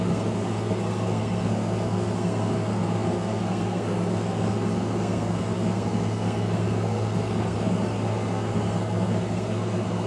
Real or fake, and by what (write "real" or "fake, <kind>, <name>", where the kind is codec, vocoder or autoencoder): fake, codec, SNAC